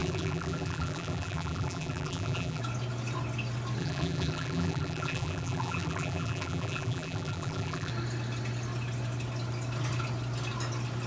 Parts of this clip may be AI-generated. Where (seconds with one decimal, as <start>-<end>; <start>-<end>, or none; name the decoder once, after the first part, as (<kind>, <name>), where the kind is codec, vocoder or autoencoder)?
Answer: 0.0-2.6 (vocoder, BigVGAN v2); 3.8-7.9